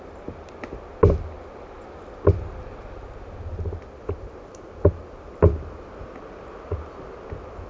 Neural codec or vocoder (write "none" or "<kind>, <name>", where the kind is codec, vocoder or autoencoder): none